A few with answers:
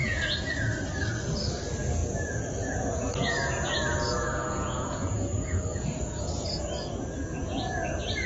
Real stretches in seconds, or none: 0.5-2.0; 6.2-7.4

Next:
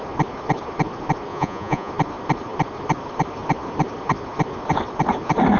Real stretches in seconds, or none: 0.0-1.3; 1.9-5.6

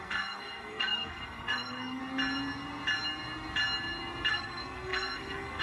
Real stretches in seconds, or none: 2.0-4.3

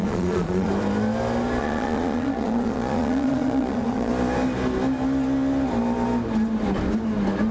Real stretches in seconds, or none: 0.7-1.6; 4.1-7.5

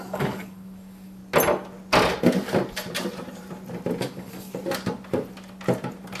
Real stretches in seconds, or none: 1.2-4.0; 4.5-6.2

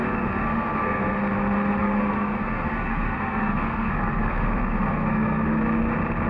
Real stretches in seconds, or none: 1.2-1.8; 5.6-6.3

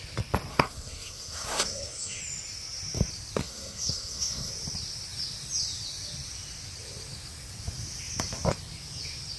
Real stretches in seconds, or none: 0.0-0.5; 2.2-3.4; 4.5-9.4

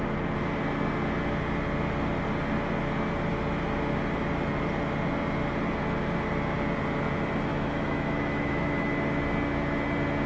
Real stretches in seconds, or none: 0.0-7.5; 8.9-10.3